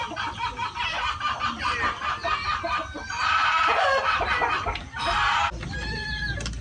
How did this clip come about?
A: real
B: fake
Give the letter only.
A